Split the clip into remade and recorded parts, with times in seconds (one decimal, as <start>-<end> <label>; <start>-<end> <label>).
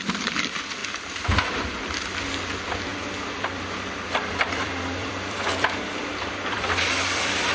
0.0-0.8 remade; 0.8-1.7 recorded; 1.7-7.5 remade